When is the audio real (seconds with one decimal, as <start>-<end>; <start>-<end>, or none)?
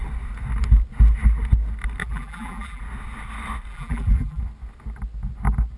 0.0-2.0; 2.8-3.7; 4.4-5.8